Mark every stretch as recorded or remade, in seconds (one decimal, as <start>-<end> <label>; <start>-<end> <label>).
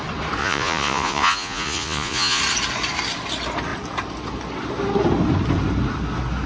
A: 0.0-0.4 recorded; 0.4-2.4 remade; 2.4-6.5 recorded